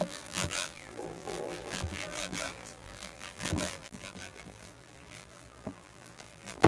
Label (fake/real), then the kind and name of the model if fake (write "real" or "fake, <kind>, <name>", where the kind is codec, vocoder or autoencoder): fake, vocoder, BigVGAN v2